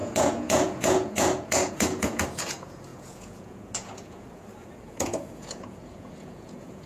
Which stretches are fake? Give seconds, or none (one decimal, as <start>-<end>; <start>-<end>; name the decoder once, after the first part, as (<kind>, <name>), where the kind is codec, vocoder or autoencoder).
0.0-6.9 (vocoder, Vocos)